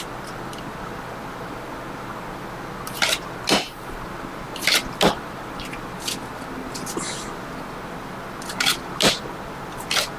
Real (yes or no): yes